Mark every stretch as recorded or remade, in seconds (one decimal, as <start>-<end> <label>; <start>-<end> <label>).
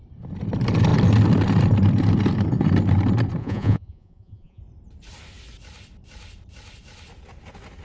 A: 0.0-3.4 recorded; 3.4-4.6 remade; 4.6-7.8 recorded